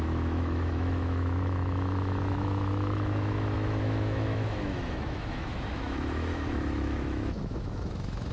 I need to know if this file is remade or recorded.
remade